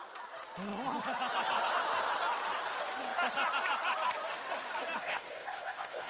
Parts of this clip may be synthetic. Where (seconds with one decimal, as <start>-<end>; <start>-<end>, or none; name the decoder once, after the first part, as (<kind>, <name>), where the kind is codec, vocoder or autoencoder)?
5.0-6.1 (codec, ZipCodec)

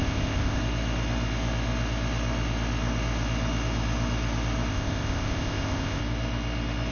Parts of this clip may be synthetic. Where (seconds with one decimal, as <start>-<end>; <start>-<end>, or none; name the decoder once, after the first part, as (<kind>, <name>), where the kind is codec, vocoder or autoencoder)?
0.0-0.6 (codec, ZipCodec); 4.7-6.0

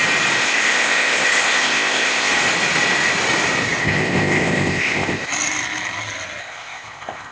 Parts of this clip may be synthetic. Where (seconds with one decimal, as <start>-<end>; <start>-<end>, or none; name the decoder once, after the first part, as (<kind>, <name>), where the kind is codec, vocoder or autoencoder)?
0.4-2.3 (codec, ZipCodec); 3.8-5.3; 6.4-7.3